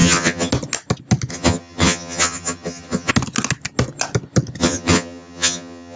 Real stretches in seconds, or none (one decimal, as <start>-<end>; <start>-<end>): 0.5-1.3; 3.1-4.6